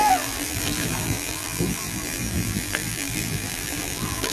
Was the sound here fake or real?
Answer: fake